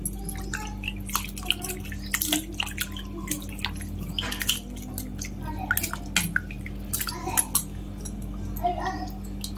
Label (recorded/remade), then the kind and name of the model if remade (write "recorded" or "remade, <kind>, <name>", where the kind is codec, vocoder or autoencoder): recorded